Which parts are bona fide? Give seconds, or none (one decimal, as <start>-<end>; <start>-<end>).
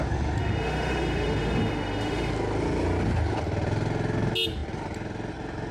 0.0-0.4; 2.3-5.7